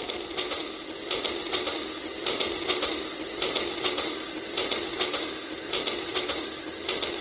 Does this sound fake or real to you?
real